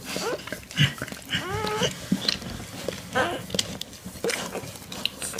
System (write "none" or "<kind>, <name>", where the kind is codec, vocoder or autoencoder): none